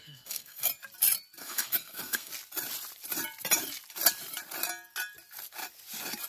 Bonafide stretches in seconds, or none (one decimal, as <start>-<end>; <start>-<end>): 0.7-1.4; 2.3-6.3